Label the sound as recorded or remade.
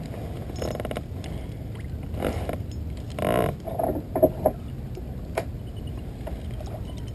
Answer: recorded